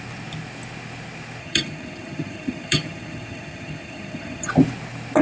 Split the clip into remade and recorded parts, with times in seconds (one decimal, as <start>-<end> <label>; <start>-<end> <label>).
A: 0.0-1.4 recorded; 1.4-4.5 remade; 4.5-5.2 recorded